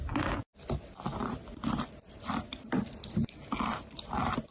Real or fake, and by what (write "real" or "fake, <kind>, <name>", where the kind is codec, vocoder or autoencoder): real